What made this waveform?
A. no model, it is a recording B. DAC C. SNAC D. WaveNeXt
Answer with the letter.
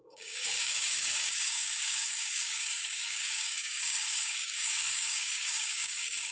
B